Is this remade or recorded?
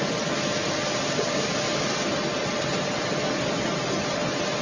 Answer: recorded